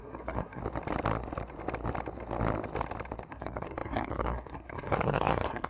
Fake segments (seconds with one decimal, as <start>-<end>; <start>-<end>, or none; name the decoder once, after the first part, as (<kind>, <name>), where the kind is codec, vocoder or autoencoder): 0.0-0.6 (codec, SNAC); 3.3-5.7